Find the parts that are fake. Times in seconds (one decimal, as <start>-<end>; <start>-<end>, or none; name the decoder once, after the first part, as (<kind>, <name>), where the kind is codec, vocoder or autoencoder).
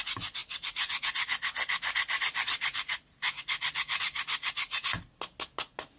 none